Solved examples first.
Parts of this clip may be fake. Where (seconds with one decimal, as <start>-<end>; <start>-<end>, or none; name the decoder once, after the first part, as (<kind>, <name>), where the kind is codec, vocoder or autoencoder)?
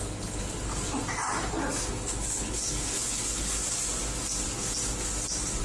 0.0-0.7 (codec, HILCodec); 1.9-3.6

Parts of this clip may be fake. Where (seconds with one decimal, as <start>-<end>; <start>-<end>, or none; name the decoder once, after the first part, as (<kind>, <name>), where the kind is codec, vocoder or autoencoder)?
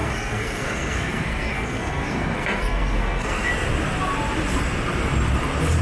0.0-3.5 (codec, SNAC)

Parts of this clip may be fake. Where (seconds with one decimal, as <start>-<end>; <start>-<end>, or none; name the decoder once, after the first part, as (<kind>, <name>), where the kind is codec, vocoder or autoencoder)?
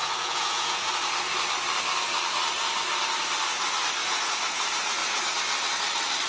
0.0-0.9 (vocoder, Vocos); 4.0-4.6